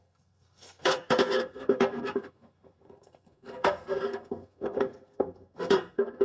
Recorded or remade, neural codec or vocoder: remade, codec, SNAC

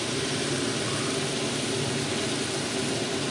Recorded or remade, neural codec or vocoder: recorded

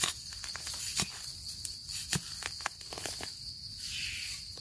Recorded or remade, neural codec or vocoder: recorded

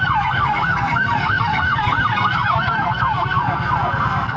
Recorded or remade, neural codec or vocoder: remade, codec, SNAC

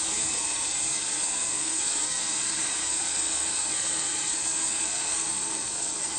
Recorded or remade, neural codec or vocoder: remade, codec, SNAC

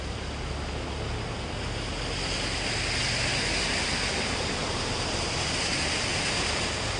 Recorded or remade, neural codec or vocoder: recorded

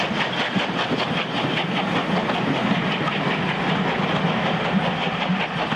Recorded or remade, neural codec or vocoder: recorded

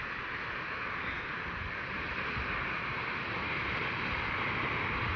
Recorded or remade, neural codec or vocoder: recorded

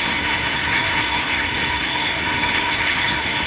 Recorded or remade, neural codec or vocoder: remade, codec, SNAC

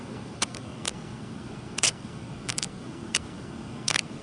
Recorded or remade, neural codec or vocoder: remade, codec, SNAC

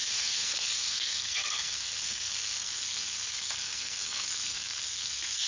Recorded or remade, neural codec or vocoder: remade, codec, SNAC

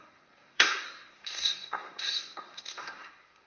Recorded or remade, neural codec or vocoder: remade, codec, SNAC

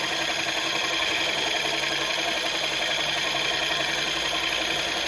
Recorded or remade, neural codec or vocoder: recorded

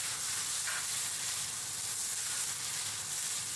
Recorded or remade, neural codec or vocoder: recorded